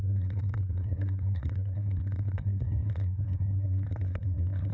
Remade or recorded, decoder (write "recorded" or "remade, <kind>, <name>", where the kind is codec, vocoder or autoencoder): remade, codec, SNAC